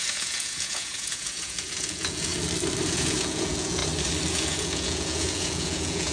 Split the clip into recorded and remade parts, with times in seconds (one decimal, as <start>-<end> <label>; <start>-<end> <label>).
0.0-2.3 remade; 2.3-2.9 recorded; 2.9-3.8 remade; 3.8-4.3 recorded; 4.3-6.1 remade